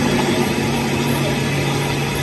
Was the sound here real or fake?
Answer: real